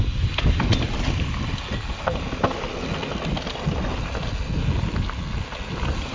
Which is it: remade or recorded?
recorded